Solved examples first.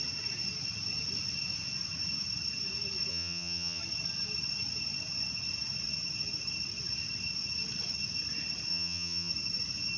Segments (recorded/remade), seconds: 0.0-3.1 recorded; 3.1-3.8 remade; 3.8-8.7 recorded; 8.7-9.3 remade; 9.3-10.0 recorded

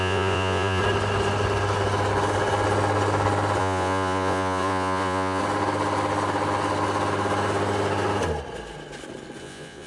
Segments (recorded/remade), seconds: 0.0-0.8 remade; 0.8-3.6 recorded; 3.6-5.4 remade; 5.4-9.4 recorded; 9.4-9.9 remade